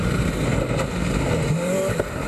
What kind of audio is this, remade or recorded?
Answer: recorded